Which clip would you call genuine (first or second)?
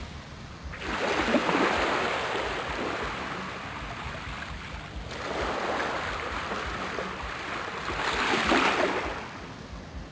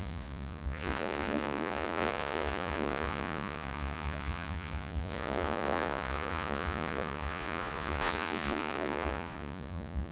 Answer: first